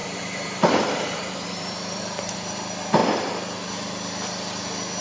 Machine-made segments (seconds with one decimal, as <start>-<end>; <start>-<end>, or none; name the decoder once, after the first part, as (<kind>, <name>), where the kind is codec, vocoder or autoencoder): 0.0-2.6 (vocoder, BigVGAN v2)